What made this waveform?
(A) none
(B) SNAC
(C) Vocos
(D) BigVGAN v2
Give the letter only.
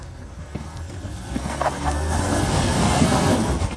B